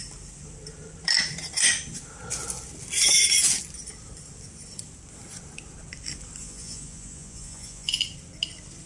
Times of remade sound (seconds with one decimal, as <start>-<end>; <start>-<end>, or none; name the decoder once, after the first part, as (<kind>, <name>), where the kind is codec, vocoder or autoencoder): 6.4-8.0 (vocoder, Vocos)